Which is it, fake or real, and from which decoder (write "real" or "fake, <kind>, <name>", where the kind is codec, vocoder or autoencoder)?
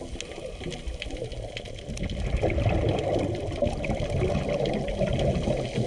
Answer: real